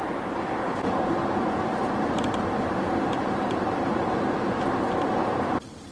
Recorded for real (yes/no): no